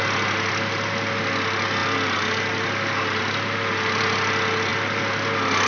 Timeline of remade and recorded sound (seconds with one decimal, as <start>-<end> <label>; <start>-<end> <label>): 0.0-5.7 recorded